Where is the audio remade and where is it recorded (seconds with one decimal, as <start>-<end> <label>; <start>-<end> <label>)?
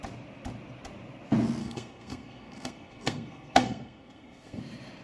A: 0.0-1.6 recorded; 1.6-4.6 remade; 4.6-5.0 recorded